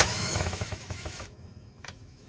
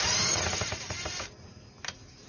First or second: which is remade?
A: first